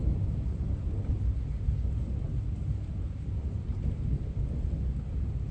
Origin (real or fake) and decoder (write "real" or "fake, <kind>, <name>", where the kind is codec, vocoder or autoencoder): real